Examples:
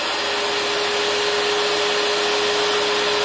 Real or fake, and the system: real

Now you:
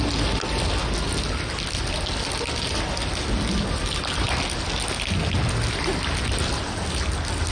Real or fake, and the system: real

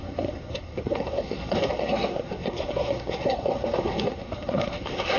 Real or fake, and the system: fake, codec, SNAC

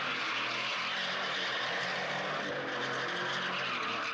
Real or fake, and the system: real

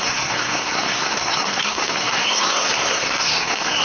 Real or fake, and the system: fake, codec, SNAC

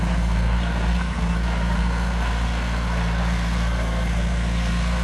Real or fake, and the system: fake, codec, SNAC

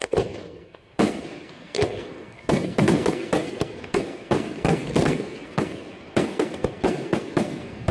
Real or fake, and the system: fake, codec, SNAC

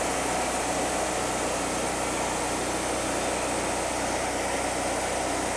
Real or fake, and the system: real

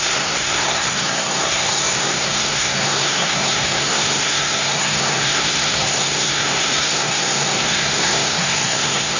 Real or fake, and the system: fake, codec, SNAC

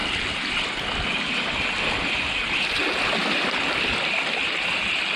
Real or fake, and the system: real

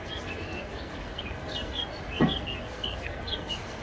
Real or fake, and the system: fake, codec, SNAC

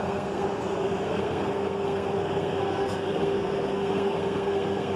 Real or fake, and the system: fake, codec, SNAC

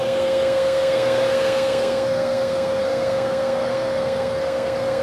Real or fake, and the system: fake, codec, SNAC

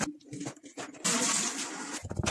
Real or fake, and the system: real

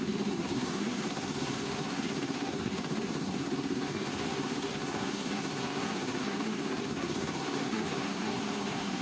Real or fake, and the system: fake, codec, SNAC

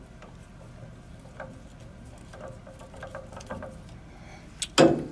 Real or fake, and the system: real